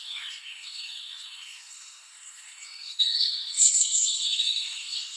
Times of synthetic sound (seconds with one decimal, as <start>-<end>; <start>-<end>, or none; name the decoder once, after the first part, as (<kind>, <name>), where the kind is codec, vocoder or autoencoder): 0.0-5.2 (codec, SNAC)

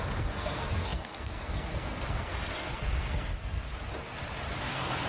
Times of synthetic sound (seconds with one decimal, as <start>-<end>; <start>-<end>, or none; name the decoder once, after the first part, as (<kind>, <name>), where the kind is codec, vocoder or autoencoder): 0.0-3.7 (codec, SNAC); 4.6-5.1

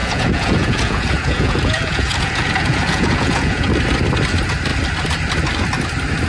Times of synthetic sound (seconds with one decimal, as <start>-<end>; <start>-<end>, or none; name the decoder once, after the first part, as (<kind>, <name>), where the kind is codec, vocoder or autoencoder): 0.0-3.7 (vocoder, Vocos)

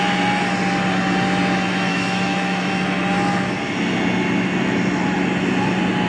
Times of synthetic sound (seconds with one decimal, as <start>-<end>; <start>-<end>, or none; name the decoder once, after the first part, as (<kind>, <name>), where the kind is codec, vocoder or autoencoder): 1.9-2.7 (autoencoder, DAC-VAE)